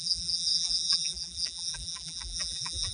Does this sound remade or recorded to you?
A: remade